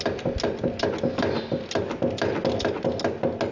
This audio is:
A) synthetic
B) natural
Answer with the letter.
B